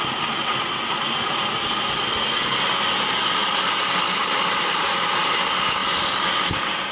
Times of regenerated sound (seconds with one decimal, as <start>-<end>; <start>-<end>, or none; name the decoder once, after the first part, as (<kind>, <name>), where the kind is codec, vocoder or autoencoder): 4.2-5.0 (vocoder, BigVGAN v2)

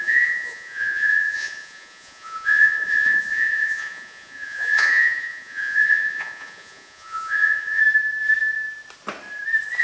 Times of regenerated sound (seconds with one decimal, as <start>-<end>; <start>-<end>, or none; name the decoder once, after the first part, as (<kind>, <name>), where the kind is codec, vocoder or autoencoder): 0.0-7.8 (vocoder, Vocos)